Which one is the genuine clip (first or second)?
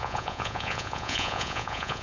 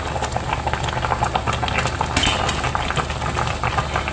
second